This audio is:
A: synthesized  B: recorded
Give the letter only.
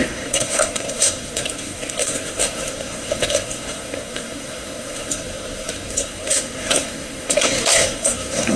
A